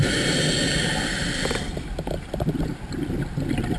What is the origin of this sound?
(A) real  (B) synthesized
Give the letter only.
A